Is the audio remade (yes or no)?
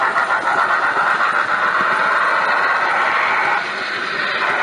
no